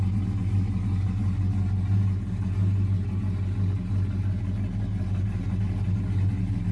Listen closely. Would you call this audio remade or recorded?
recorded